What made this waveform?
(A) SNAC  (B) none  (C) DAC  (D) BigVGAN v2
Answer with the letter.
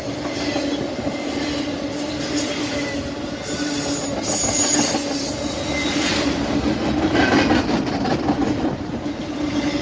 B